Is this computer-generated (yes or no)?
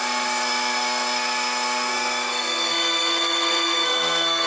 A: yes